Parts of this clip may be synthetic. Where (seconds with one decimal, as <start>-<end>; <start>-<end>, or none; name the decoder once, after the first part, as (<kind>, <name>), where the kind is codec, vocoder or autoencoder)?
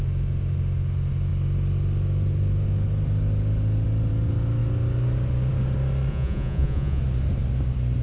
6.1-7.0 (vocoder, Vocos)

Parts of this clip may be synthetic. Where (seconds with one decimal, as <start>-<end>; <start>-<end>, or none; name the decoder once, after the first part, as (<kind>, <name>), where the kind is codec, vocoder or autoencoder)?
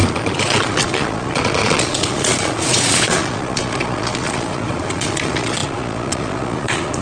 0.0-7.0 (vocoder, Vocos)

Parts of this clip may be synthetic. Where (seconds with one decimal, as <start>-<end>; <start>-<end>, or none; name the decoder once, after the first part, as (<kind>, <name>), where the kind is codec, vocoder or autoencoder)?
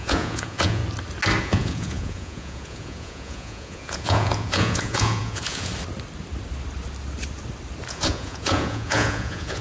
0.0-0.8 (vocoder, Vocos); 1.4-5.7; 7.9-9.6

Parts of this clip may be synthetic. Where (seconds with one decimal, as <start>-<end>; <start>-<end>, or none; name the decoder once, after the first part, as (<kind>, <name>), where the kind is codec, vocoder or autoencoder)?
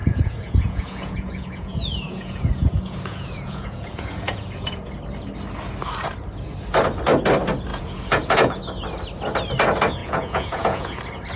0.0-4.9 (vocoder, Vocos); 7.7-8.6; 10.0-11.0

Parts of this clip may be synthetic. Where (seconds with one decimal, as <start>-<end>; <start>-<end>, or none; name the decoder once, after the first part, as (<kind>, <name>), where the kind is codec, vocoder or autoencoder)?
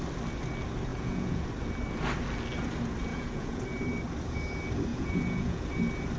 0.9-1.5 (vocoder, Vocos); 3.1-3.6; 4.9-5.7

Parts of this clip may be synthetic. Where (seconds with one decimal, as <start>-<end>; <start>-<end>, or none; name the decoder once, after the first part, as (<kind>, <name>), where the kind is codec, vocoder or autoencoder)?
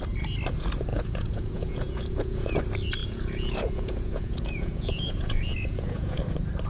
0.9-2.6 (vocoder, Vocos); 3.0-6.2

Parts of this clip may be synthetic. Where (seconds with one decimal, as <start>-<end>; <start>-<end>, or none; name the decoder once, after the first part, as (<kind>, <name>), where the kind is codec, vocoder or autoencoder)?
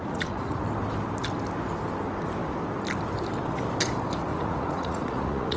0.0-0.6 (vocoder, Vocos); 4.3-5.6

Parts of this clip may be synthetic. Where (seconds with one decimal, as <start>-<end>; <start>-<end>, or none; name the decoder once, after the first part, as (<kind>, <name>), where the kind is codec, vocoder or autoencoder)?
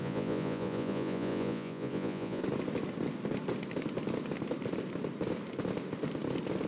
0.0-2.4 (vocoder, Vocos)